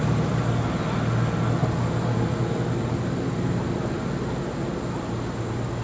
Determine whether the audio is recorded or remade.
recorded